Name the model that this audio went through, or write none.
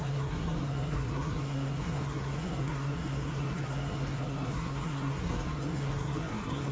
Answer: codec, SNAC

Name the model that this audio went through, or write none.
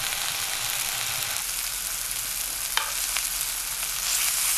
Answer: none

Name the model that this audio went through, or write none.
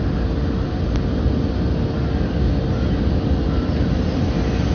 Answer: none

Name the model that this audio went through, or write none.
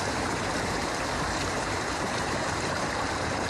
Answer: vocoder, BigVGAN v2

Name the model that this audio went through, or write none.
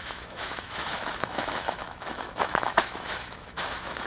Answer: autoencoder, DAC-VAE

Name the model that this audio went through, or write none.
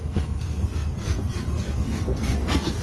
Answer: codec, SNAC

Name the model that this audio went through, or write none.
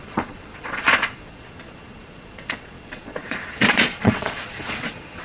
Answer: vocoder, Vocos